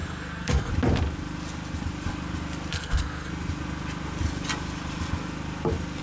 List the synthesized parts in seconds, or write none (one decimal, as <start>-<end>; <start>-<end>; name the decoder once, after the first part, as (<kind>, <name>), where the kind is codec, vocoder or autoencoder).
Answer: 0.0-0.7 (codec, SNAC); 2.7-3.3